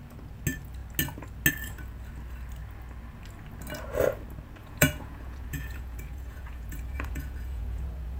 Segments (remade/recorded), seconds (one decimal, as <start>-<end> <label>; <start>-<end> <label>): 0.0-4.6 recorded; 4.6-8.2 remade